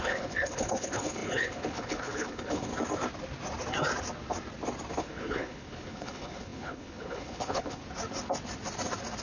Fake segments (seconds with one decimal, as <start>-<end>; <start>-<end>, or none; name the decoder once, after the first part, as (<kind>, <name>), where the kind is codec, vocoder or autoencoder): 0.0-2.7 (codec, HILCodec); 5.0-7.8